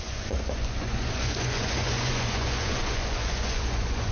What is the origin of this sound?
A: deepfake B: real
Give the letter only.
A